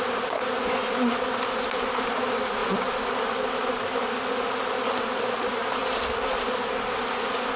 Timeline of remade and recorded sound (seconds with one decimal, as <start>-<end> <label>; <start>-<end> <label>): 0.0-7.6 recorded